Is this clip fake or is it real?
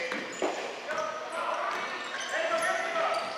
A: real